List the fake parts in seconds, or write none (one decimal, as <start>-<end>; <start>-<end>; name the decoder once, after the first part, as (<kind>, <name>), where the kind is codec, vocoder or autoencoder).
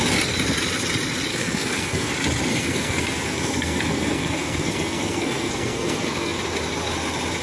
1.3-2.1 (codec, SNAC); 2.5-6.4